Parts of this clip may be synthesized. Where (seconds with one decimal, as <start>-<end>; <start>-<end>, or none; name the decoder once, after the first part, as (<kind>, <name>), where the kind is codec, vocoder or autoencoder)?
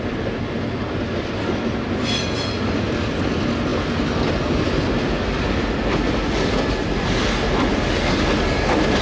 none